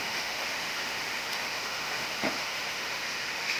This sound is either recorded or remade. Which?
remade